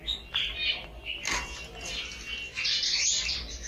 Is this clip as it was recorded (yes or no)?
yes